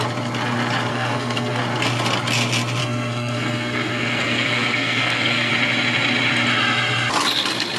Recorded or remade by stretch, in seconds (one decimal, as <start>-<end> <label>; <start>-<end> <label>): 0.0-0.9 recorded; 0.9-1.6 remade; 1.6-2.8 recorded; 2.8-5.5 remade; 5.5-7.8 recorded